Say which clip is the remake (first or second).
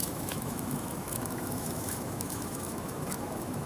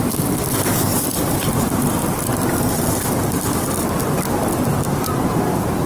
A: first